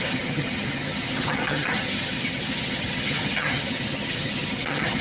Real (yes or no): no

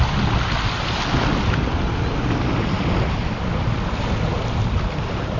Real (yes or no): yes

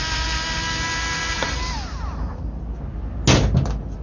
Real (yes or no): yes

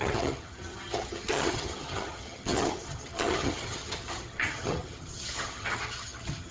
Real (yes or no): no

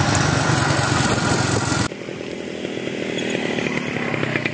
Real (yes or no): yes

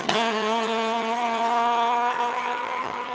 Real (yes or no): no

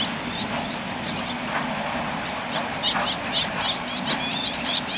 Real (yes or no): yes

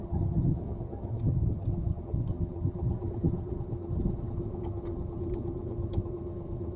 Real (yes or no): no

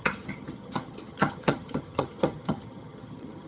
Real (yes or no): no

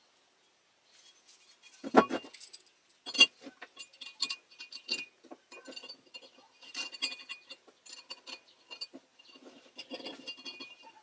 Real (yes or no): yes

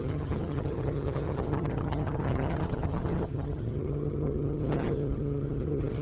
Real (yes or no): no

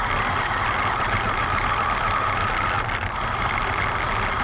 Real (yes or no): yes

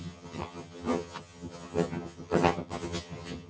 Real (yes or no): no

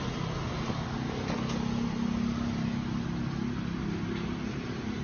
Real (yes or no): yes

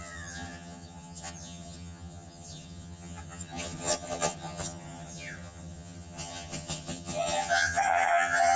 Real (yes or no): no